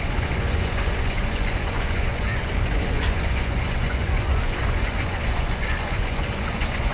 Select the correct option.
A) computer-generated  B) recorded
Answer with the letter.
A